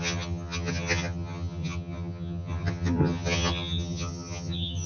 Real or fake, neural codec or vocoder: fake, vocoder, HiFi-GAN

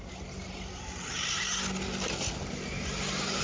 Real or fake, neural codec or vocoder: real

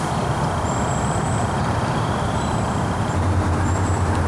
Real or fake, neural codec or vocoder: real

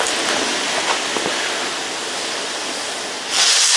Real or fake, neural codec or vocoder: real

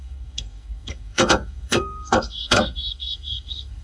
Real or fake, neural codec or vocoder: fake, codec, SNAC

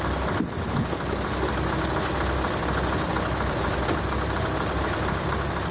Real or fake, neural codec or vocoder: real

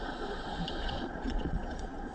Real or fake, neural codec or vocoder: fake, vocoder, Vocos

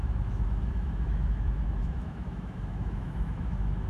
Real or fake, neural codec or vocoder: fake, autoencoder, DAC-VAE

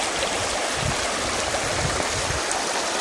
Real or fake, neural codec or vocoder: real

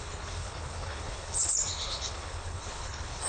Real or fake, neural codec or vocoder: fake, codec, HILCodec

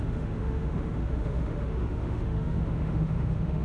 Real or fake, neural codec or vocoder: fake, autoencoder, DAC-VAE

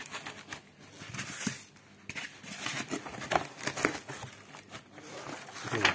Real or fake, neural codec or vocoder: real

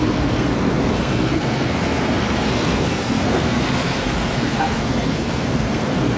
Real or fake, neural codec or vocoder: fake, codec, SNAC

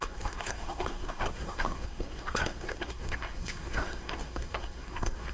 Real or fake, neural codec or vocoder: fake, codec, SNAC